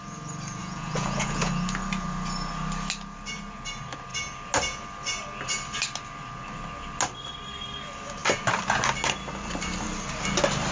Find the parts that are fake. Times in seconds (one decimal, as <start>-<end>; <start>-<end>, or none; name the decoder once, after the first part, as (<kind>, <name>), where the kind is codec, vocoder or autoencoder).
0.6-1.5 (vocoder, Vocos)